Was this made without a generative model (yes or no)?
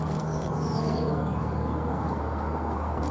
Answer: no